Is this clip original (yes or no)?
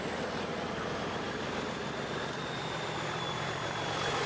yes